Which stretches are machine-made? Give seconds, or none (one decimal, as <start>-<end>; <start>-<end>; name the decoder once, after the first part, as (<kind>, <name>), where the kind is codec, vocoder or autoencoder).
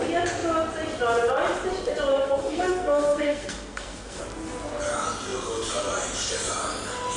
2.1-4.2 (codec, SNAC)